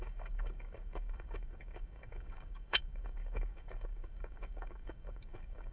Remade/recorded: remade